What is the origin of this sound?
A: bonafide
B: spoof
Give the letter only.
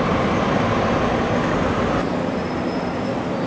A